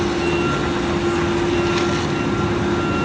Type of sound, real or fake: real